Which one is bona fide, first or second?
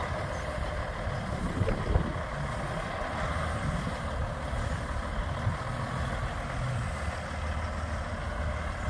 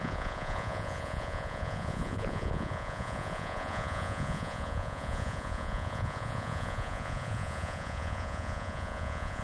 first